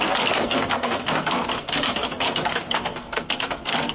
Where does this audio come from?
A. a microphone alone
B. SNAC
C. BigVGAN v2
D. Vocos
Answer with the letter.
B